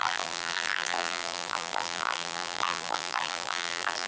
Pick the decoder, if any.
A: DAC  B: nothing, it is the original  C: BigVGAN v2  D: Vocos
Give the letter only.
C